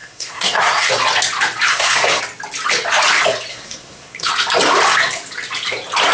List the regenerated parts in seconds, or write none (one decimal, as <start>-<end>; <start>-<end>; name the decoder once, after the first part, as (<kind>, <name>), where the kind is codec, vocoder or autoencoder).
0.0-0.9 (codec, SNAC); 1.7-2.2; 3.5-4.3